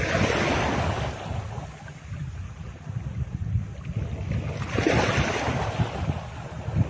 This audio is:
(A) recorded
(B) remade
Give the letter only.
A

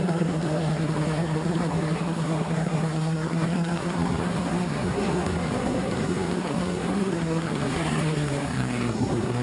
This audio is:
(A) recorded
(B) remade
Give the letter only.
B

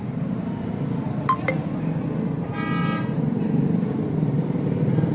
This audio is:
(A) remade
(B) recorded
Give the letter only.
B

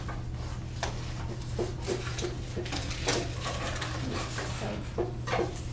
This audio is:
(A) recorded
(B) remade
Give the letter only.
A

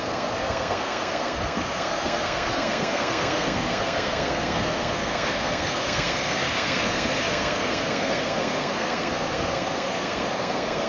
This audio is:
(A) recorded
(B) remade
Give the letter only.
B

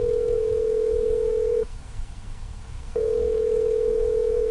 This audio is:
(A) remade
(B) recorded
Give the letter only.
A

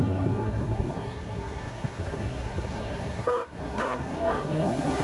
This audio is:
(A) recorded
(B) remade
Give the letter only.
B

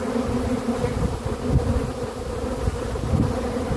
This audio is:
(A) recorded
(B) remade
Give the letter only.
A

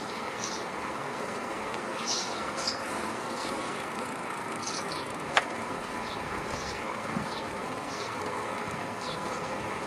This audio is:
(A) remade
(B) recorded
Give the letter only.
A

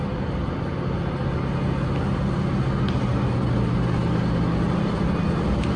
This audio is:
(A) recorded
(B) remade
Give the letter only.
A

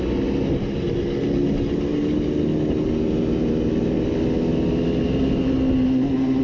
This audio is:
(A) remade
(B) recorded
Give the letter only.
B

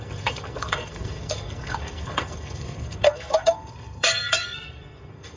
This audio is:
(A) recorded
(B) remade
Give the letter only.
B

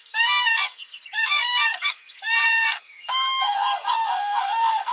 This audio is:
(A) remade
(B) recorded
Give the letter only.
A